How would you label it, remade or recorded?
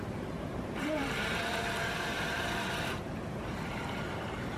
remade